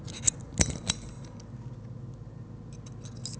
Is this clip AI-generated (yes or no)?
no